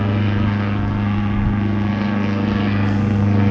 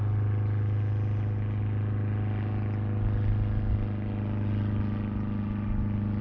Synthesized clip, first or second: first